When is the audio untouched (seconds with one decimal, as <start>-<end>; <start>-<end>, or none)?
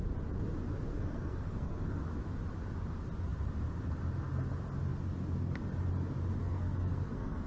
0.0-0.9; 2.0-6.4